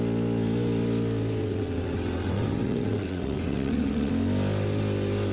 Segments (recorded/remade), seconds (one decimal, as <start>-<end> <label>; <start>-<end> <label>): 0.0-1.4 recorded; 1.4-4.1 remade; 4.1-5.3 recorded